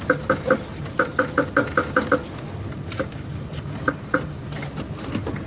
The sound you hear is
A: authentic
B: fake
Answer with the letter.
A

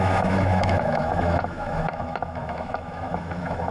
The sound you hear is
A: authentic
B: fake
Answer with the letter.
B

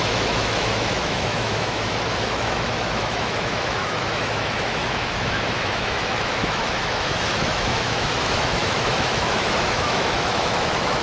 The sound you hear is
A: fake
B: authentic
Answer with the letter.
A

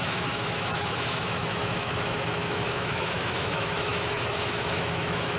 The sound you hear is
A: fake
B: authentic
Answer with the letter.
A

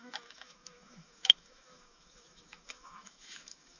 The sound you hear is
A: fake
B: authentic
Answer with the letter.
A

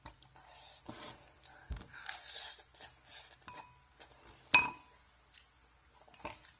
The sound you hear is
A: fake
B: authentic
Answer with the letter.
B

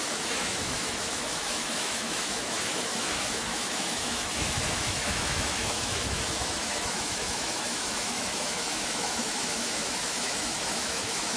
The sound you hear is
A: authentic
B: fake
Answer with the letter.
B